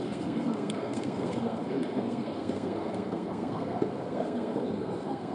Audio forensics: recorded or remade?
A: remade